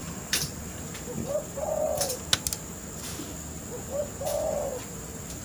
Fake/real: real